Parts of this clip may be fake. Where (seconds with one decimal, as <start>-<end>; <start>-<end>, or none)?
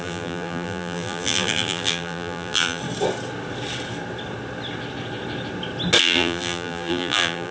0.0-2.8; 6.0-7.5